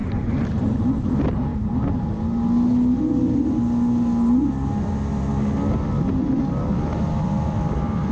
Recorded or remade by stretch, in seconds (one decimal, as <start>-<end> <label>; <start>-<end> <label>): 0.0-1.1 remade; 1.1-8.1 recorded